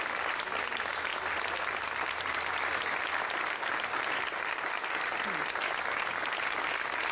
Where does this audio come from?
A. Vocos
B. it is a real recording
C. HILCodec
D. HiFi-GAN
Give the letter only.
B